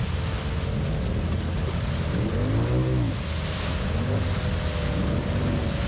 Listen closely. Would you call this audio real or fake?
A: real